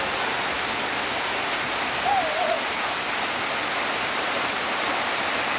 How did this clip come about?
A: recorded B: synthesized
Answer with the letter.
A